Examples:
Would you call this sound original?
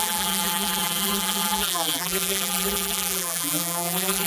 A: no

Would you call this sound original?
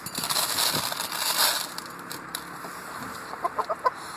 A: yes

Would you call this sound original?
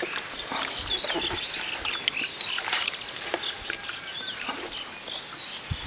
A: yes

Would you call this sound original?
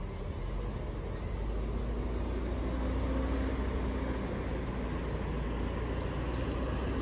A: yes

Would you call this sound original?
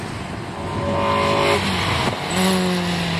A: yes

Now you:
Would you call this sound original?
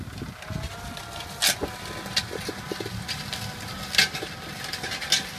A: yes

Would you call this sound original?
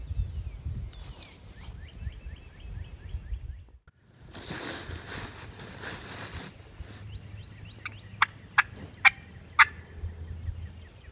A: yes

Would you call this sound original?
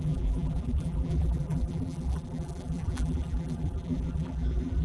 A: no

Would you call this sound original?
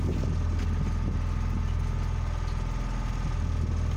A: yes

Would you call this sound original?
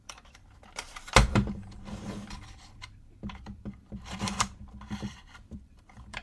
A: no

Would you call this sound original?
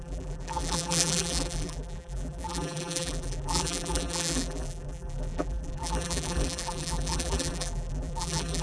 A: no